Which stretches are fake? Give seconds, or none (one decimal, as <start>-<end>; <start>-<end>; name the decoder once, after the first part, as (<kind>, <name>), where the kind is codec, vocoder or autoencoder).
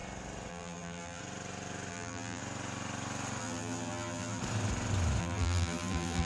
0.5-1.2 (vocoder, BigVGAN v2); 1.9-2.4; 3.4-4.4; 5.2-6.2